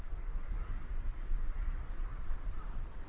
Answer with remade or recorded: recorded